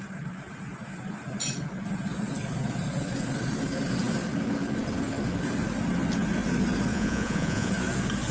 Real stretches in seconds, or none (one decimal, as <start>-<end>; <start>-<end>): 0.0-6.9; 7.7-8.3